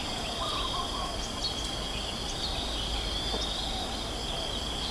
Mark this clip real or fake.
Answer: real